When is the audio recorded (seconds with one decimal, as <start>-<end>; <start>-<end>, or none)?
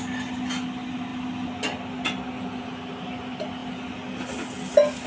0.0-5.1